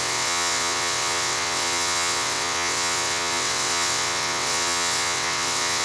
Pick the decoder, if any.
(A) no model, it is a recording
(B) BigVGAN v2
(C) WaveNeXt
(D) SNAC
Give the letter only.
C